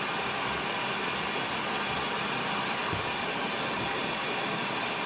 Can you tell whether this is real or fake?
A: real